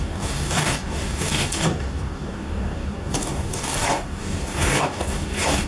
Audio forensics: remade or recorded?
remade